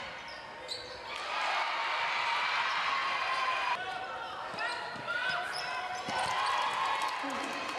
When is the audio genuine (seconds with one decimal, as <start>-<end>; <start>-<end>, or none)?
0.0-3.0; 5.8-7.8